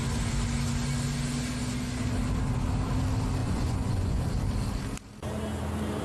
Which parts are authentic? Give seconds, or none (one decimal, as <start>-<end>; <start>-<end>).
0.0-3.4; 4.2-6.0